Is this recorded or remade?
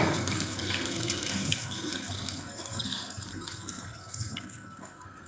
remade